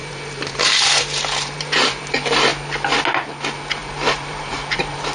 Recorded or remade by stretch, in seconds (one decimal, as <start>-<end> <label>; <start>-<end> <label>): 0.0-2.0 remade; 2.0-3.8 recorded; 3.8-5.1 remade